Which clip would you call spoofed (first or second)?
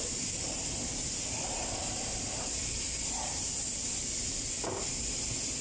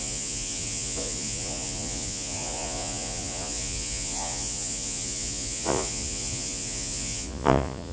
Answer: second